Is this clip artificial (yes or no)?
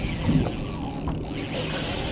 no